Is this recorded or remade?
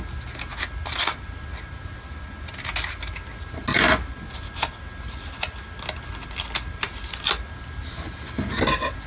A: recorded